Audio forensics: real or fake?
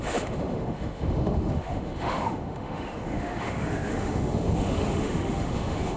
fake